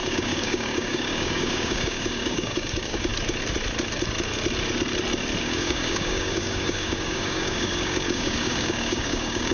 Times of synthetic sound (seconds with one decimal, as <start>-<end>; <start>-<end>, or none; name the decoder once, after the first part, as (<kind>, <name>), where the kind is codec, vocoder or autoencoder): 0.0-3.1 (codec, DAC); 5.4-9.5